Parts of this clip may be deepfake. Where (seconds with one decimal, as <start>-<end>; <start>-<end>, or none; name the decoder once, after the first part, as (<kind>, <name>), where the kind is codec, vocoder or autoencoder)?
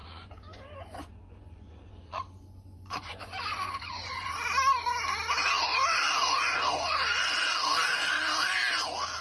0.0-4.3 (vocoder, Vocos)